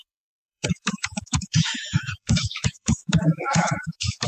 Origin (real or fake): fake